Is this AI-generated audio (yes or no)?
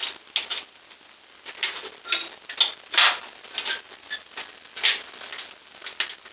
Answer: no